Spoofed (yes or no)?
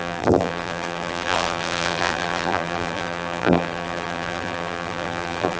yes